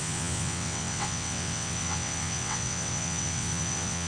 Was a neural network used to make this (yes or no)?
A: yes